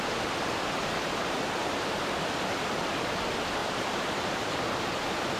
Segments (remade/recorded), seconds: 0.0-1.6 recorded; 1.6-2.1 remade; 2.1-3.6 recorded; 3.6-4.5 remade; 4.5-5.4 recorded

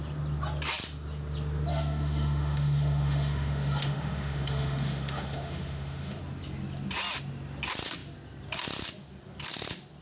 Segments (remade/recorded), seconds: 0.0-1.7 recorded; 1.7-6.2 remade; 6.2-10.0 recorded

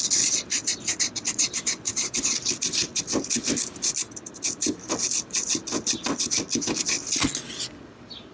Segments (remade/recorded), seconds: 0.0-1.9 recorded; 1.9-6.5 remade; 6.5-8.3 recorded